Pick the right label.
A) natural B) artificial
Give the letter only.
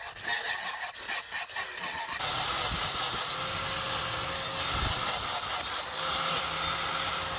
A